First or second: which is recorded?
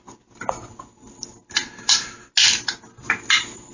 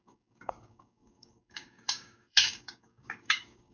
first